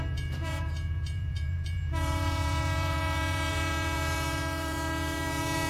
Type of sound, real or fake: fake